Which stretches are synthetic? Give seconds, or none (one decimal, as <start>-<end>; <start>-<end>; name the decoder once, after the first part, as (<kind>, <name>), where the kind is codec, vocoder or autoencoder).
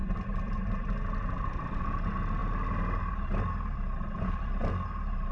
0.0-1.8 (vocoder, BigVGAN v2); 2.4-5.3